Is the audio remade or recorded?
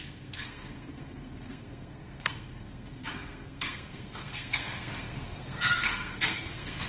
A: remade